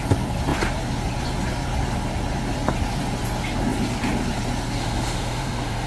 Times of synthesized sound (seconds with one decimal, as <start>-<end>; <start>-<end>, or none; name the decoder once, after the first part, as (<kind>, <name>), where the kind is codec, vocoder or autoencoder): 4.8-5.9 (autoencoder, DAC-VAE)